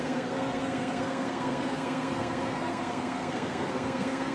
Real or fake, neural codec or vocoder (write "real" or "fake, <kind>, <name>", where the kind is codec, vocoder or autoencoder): fake, codec, SNAC